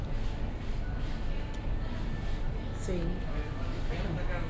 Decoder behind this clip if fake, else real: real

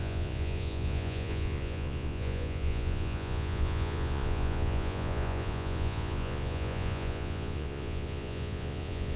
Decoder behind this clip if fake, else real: fake, vocoder, Vocos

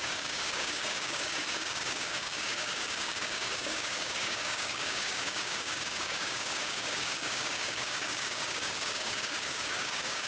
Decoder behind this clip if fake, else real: fake, codec, DAC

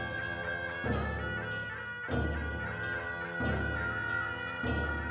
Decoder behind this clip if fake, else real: real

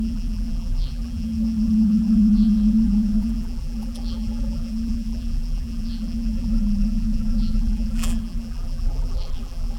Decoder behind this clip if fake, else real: fake, vocoder, BigVGAN v2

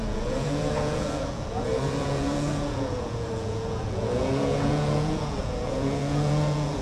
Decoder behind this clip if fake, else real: fake, vocoder, Vocos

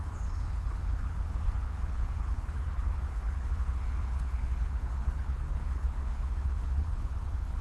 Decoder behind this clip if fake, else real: fake, codec, HILCodec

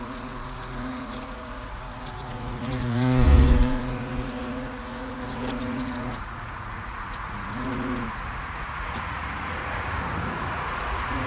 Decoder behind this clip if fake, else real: fake, vocoder, Vocos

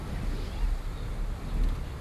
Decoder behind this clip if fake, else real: real